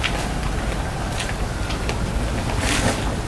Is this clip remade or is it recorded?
recorded